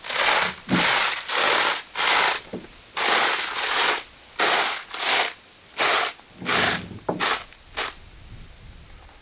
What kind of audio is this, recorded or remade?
recorded